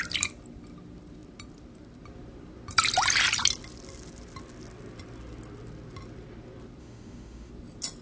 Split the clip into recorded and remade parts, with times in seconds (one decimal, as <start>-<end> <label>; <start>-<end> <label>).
0.0-6.8 recorded; 6.8-7.5 remade; 7.5-8.0 recorded